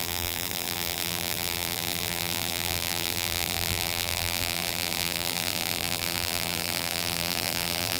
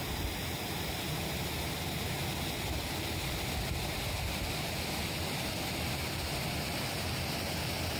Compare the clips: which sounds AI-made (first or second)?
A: first